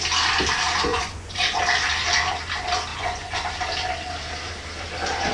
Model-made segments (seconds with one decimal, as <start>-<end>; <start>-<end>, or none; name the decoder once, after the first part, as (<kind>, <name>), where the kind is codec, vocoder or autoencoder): 0.9-1.6 (vocoder, Vocos); 2.9-3.5